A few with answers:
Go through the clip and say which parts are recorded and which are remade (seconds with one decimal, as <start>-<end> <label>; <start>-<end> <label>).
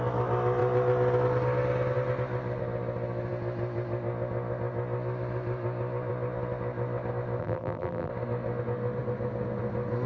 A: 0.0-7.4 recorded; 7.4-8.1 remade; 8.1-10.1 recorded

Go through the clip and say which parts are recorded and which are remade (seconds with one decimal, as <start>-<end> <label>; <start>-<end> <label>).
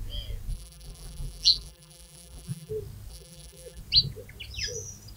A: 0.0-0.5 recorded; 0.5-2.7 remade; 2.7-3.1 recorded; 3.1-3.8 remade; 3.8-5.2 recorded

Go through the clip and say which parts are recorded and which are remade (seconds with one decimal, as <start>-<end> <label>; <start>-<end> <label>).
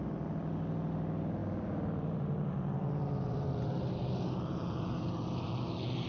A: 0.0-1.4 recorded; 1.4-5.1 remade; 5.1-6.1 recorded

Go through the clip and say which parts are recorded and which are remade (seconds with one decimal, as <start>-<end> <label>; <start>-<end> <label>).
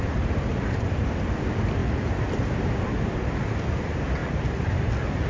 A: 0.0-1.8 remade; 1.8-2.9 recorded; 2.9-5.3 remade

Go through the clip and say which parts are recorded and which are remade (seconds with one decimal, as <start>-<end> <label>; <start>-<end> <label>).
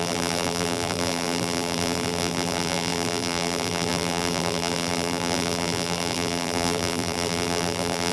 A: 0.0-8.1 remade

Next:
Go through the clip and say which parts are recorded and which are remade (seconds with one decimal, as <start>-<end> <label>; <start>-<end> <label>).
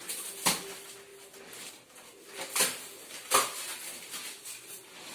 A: 0.0-5.1 recorded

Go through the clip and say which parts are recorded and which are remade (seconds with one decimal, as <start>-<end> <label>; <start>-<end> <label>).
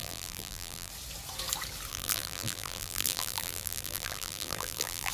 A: 0.0-0.9 remade; 0.9-1.9 recorded; 1.9-5.1 remade